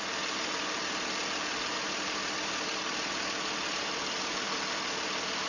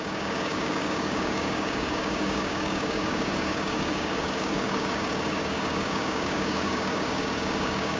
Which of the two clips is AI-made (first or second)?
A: second